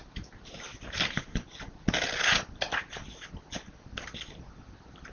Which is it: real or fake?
real